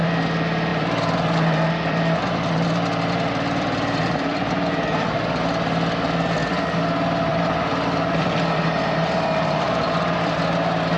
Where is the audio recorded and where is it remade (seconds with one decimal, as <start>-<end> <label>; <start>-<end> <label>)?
0.0-0.7 recorded; 0.7-5.1 remade; 5.1-7.3 recorded; 7.3-10.4 remade; 10.4-11.0 recorded